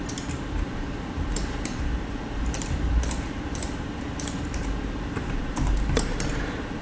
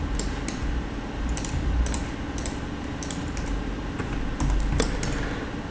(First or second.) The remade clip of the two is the first